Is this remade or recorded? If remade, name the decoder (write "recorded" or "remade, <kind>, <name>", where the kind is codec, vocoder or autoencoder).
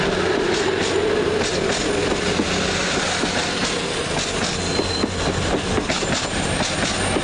recorded